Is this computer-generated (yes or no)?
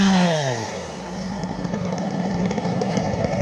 yes